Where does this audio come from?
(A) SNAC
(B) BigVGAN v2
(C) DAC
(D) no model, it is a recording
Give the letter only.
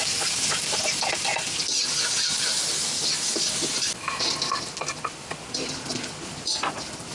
D